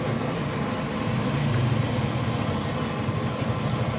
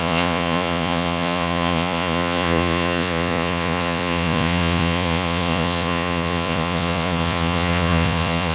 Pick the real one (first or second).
first